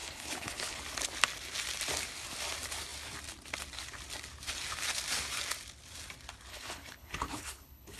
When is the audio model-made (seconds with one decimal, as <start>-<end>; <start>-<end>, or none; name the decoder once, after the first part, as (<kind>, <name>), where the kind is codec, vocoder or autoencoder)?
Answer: 0.0-0.8 (codec, HILCodec); 6.5-8.0